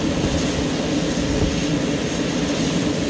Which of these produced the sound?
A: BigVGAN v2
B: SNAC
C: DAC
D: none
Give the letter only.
D